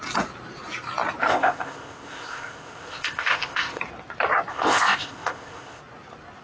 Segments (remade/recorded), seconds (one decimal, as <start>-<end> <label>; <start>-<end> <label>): 0.0-1.3 recorded; 1.3-3.8 remade; 3.8-4.5 recorded; 4.5-5.8 remade; 5.8-6.4 recorded